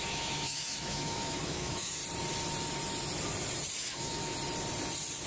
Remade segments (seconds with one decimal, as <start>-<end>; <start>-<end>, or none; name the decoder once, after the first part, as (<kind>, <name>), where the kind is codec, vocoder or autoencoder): 0.0-2.0 (autoencoder, DAC-VAE); 3.8-4.3